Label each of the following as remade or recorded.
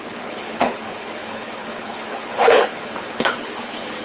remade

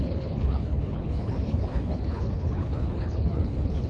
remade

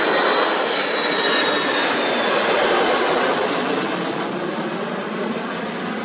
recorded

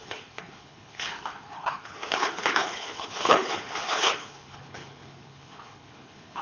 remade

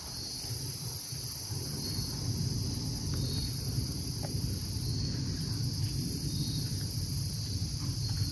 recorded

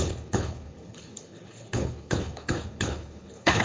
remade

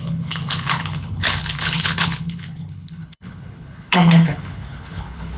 remade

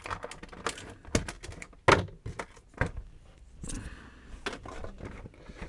recorded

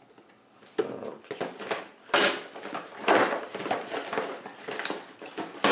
recorded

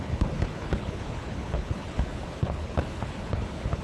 remade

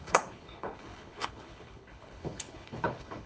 remade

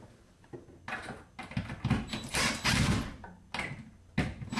recorded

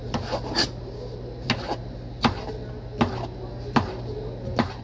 recorded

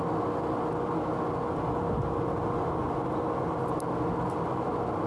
recorded